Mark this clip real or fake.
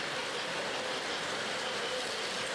real